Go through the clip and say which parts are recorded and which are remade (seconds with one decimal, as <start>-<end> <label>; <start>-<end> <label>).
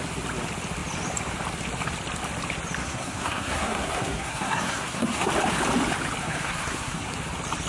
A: 0.0-2.8 recorded; 2.8-5.3 remade; 5.3-6.2 recorded; 6.2-7.1 remade; 7.1-7.7 recorded